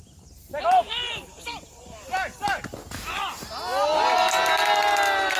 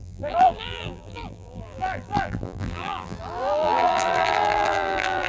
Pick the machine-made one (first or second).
second